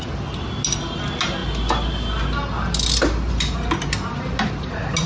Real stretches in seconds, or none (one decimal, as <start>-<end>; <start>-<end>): 0.0-5.1

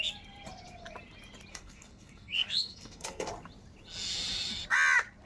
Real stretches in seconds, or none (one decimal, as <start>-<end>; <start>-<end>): 0.0-1.5; 3.3-5.3

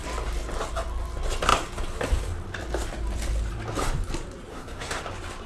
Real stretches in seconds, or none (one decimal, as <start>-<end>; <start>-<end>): 0.0-4.5; 5.1-5.5

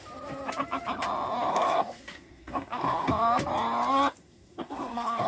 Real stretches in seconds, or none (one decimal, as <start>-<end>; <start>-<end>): 0.0-1.5; 3.1-4.2